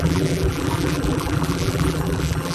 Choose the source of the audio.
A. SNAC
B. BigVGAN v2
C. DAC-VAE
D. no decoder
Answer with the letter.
B